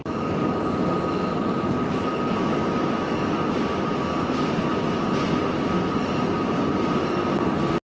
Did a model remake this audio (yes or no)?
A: no